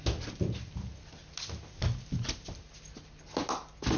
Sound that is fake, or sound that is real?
real